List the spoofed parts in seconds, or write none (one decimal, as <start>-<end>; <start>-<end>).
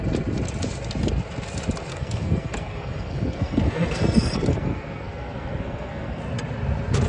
1.9-6.2